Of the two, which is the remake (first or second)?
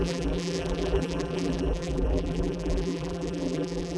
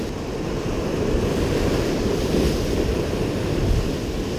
first